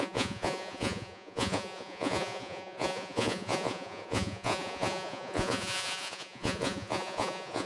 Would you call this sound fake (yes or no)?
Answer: yes